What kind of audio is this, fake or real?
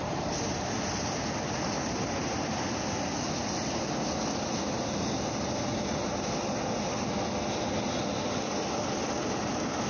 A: real